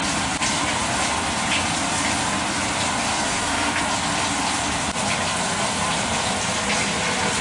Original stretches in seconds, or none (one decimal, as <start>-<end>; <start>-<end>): 0.0-3.1; 3.8-7.4